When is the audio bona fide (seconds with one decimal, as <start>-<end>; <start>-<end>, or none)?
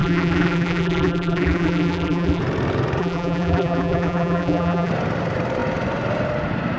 2.4-3.0; 4.9-6.8